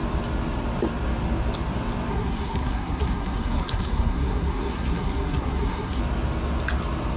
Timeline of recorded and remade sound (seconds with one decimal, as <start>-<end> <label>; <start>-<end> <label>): 0.0-2.1 recorded; 2.1-6.0 remade; 6.0-7.2 recorded